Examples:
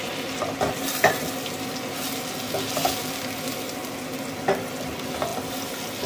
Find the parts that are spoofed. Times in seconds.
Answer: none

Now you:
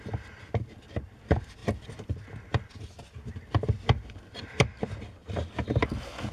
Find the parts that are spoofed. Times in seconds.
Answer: none

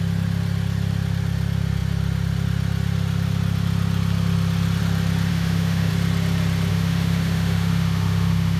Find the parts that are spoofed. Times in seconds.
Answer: 5.3-5.9 (autoencoder, DAC-VAE); 6.7-8.6

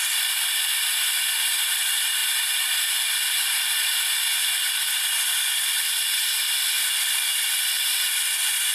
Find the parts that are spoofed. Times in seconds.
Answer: none

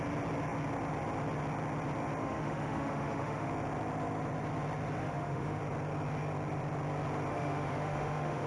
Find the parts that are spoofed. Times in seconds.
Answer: 2.2-3.5 (autoencoder, DAC-VAE); 5.0-5.6; 7.3-8.5